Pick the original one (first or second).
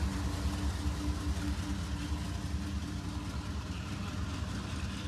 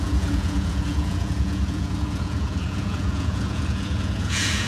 first